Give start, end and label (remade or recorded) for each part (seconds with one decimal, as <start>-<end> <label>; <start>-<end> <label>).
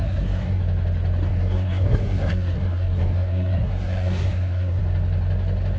0.0-0.6 remade; 0.6-1.3 recorded; 1.3-4.8 remade; 4.8-5.8 recorded